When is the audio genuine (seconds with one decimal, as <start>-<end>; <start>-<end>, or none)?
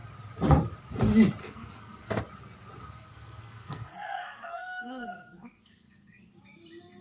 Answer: 0.0-1.4; 2.2-2.8; 6.3-7.0